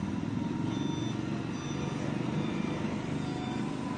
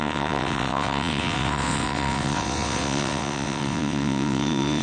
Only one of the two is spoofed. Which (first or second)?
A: second